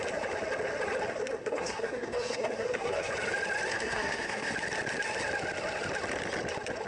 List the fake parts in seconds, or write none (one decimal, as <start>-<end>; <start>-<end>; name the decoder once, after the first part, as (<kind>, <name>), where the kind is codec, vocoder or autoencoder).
1.4-3.1 (codec, SNAC); 3.7-4.5

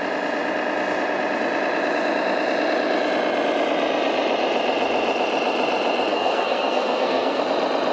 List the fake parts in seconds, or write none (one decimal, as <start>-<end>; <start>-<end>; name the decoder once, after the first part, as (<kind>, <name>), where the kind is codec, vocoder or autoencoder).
6.1-7.4 (codec, SNAC)

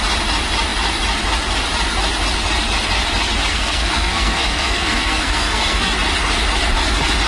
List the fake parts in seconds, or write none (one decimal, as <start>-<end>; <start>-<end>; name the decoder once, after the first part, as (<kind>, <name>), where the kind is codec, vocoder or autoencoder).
3.5-5.9 (codec, SNAC)

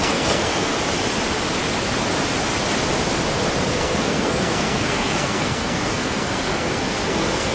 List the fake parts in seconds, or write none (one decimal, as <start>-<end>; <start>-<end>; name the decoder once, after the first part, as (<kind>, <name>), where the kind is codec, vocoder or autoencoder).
0.0-0.7 (codec, SNAC); 3.7-7.5

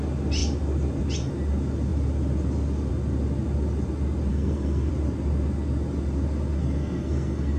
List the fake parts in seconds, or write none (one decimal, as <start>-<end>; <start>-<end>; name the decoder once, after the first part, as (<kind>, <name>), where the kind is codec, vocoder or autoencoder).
4.3-4.9 (codec, SNAC); 6.6-7.6

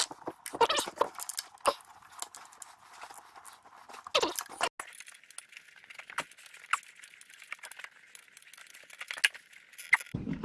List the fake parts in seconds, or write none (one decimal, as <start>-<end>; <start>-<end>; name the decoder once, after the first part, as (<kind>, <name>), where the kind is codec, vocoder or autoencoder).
none

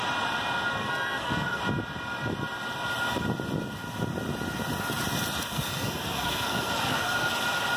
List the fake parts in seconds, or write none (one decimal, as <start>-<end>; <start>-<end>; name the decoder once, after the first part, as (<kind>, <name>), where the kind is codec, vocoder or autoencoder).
0.8-1.6 (codec, SNAC); 5.5-7.3

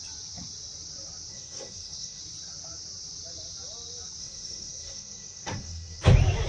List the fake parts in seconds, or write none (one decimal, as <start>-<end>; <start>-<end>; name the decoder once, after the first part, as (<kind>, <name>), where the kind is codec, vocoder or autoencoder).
1.3-2.2 (codec, SNAC); 4.2-6.0